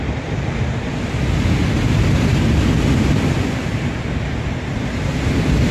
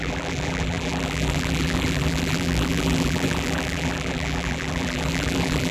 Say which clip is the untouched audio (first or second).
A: first